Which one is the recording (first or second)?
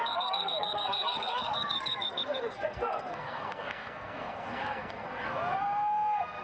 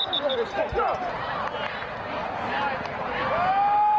second